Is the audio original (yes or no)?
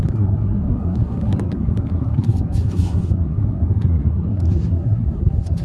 no